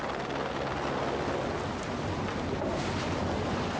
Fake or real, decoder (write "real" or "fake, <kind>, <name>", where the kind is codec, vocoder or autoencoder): real